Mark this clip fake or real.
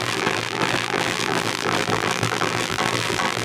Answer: fake